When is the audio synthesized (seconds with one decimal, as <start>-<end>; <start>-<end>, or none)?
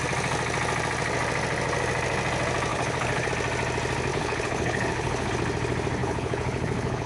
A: 2.7-3.3; 4.1-5.3; 6.0-7.1